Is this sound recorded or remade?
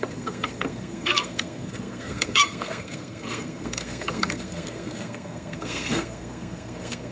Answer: remade